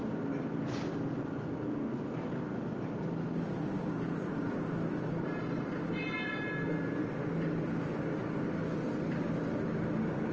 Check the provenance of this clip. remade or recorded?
recorded